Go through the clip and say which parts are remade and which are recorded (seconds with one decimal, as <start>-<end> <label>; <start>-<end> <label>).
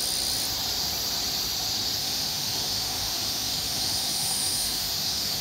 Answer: 0.0-2.0 recorded; 2.0-5.4 remade